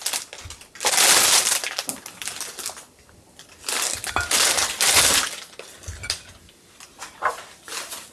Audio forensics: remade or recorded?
recorded